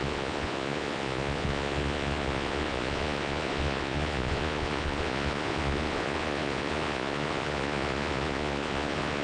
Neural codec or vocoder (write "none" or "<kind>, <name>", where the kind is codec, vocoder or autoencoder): vocoder, Vocos